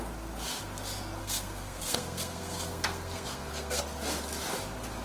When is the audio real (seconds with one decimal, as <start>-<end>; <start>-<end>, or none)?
0.0-1.2; 3.8-5.0